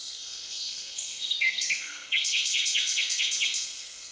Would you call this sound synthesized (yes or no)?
yes